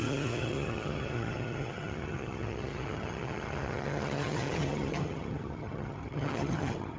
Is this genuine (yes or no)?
no